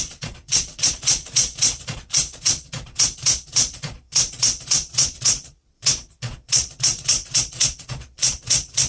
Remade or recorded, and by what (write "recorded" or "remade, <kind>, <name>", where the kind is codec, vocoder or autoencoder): remade, vocoder, Vocos